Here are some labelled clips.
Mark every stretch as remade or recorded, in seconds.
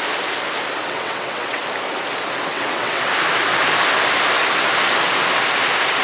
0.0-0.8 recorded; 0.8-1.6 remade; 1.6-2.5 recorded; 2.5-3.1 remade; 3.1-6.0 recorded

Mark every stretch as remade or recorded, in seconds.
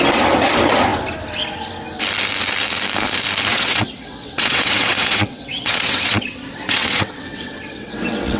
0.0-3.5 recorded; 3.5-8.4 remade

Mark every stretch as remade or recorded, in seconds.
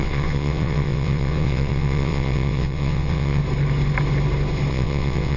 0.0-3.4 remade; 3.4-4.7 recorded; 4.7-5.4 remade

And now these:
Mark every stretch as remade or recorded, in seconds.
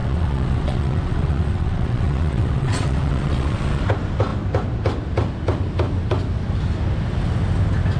0.0-3.8 remade; 3.8-8.0 recorded